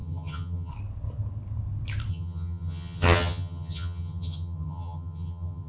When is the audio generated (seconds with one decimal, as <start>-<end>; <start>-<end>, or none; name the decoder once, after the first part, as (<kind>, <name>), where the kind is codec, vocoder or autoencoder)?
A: 0.0-0.7 (vocoder, HiFi-GAN); 2.1-5.7

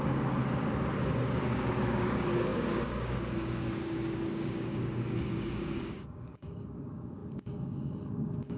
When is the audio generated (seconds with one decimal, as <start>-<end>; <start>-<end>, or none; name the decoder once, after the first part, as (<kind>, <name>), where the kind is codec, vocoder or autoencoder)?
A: 0.0-0.4 (codec, DAC); 1.0-8.6

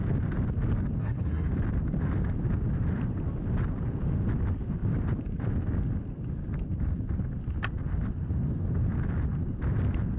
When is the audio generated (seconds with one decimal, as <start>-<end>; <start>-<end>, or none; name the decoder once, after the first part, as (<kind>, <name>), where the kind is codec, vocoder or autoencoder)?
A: 1.0-1.5 (codec, SNAC)

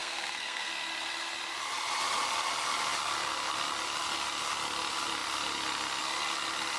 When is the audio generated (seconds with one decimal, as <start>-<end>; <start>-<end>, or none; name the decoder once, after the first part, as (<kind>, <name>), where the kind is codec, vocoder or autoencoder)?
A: 0.0-0.7 (codec, SNAC)